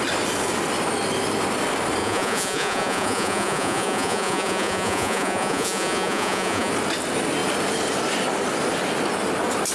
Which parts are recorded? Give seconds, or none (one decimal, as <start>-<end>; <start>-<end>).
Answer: 0.0-2.0; 6.7-9.7